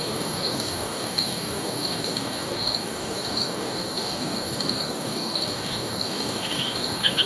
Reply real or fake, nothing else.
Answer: fake